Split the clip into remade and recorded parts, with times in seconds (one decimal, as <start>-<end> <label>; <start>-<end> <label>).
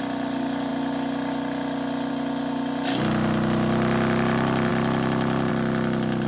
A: 0.0-6.3 recorded